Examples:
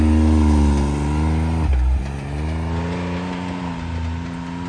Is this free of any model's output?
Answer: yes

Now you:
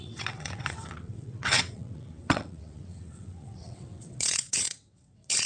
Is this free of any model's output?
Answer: no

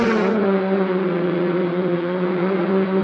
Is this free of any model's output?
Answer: no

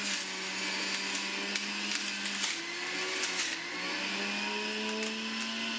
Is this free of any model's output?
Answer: yes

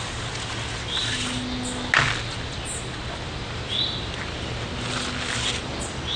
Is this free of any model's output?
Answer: yes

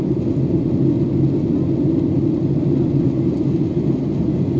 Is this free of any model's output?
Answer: yes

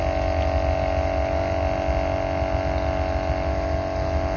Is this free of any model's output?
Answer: yes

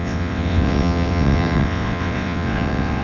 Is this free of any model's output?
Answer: no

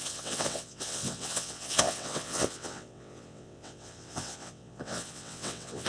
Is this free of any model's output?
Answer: no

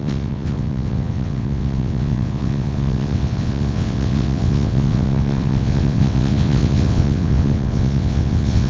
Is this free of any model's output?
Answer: no